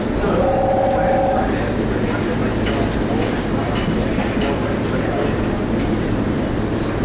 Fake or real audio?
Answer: real